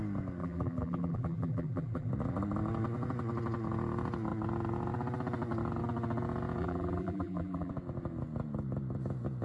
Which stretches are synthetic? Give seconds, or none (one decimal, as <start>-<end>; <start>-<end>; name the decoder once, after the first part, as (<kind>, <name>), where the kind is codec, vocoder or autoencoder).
0.4-2.1 (vocoder, BigVGAN v2); 6.6-7.7